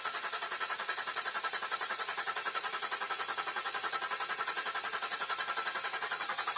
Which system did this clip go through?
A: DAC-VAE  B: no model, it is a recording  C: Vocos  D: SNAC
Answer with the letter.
C